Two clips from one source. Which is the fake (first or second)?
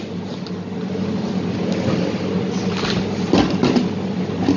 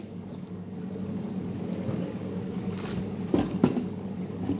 second